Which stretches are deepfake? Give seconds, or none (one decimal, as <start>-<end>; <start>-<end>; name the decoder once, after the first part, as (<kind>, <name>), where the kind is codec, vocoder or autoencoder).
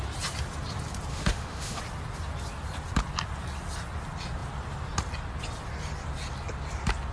1.1-1.8 (autoencoder, DAC-VAE)